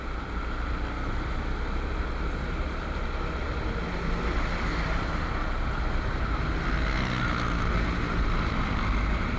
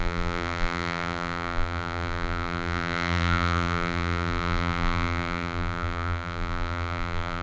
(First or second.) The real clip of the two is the first